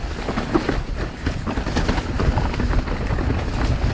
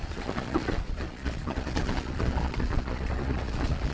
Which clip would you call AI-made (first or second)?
second